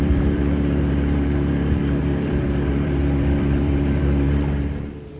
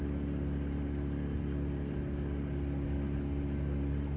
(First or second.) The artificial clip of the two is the first